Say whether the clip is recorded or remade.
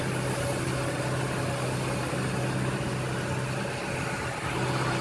recorded